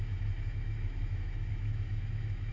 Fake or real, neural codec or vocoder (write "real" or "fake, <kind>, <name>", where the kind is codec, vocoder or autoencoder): fake, autoencoder, DAC-VAE